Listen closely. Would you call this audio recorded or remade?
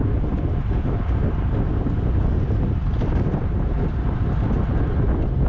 recorded